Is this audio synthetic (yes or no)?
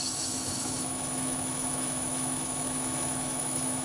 yes